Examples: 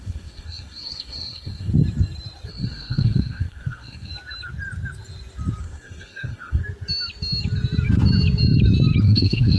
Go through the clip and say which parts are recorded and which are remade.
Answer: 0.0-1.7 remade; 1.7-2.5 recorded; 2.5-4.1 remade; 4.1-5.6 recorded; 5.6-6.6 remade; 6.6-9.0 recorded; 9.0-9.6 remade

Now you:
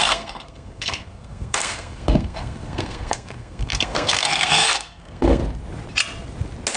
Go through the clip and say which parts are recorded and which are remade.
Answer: 0.0-5.4 remade; 5.4-6.8 recorded

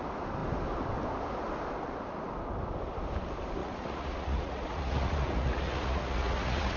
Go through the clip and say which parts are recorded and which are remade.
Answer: 0.0-3.6 recorded; 3.6-6.8 remade

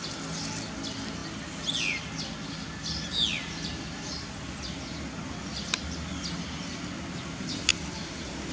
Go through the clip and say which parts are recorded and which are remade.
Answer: 0.0-8.5 recorded

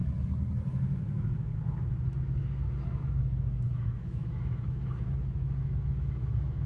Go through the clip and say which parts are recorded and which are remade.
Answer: 0.0-0.7 recorded; 0.7-6.7 remade

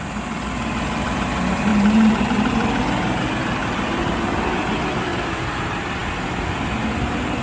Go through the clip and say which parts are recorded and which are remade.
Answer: 0.0-1.7 recorded; 1.7-2.8 remade; 2.8-3.6 recorded; 3.6-4.6 remade; 4.6-5.1 recorded; 5.1-5.6 remade; 5.6-7.4 recorded

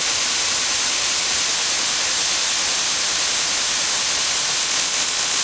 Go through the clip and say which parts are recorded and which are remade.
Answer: 0.0-4.6 recorded; 4.6-5.4 remade

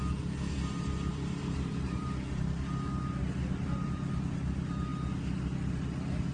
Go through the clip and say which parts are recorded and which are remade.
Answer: 0.0-1.1 recorded; 1.1-2.7 remade; 2.7-3.2 recorded; 3.2-4.1 remade; 4.1-6.3 recorded